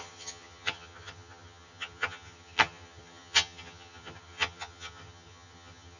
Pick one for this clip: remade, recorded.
remade